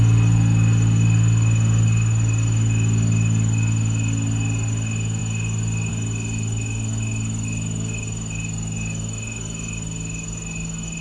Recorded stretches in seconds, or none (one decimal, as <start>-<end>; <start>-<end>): 0.0-11.0